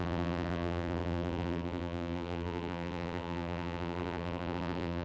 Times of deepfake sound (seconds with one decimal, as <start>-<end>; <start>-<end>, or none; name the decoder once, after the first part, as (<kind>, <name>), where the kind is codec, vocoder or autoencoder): 0.0-5.0 (vocoder, BigVGAN v2)

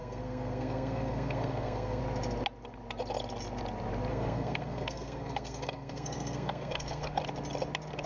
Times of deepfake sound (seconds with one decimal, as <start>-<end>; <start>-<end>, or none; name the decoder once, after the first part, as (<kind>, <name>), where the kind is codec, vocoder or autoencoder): 0.0-2.0 (codec, SNAC); 4.1-7.2

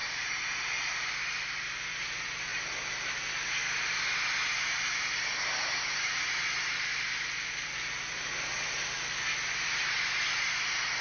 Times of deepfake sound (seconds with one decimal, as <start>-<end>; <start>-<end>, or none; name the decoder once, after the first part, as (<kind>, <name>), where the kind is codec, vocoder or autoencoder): none